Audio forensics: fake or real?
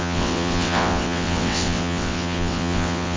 fake